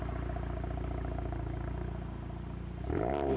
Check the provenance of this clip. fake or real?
real